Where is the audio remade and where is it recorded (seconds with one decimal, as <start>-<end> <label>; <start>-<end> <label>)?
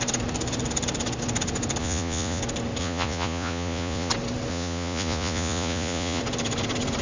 0.0-1.8 recorded; 1.8-2.4 remade; 2.4-2.8 recorded; 2.8-4.1 remade; 4.1-4.5 recorded; 4.5-6.2 remade; 6.2-7.0 recorded